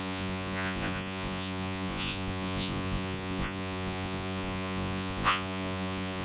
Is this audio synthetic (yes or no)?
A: yes